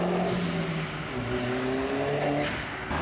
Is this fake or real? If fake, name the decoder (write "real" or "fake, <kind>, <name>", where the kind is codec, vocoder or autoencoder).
real